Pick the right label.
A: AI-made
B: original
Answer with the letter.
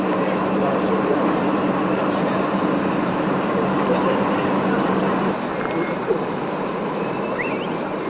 A